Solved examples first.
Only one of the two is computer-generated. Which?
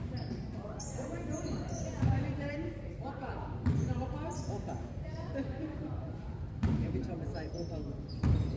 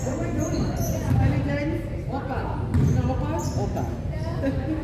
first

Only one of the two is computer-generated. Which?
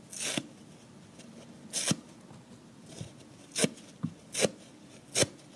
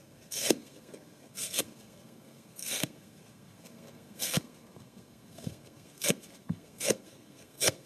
second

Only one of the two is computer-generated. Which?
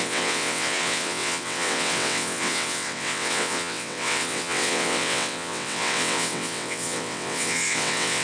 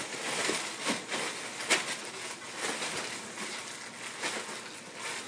first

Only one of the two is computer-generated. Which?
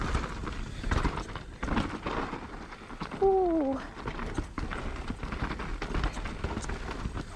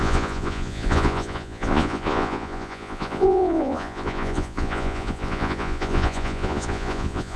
second